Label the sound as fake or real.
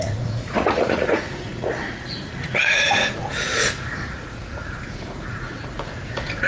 fake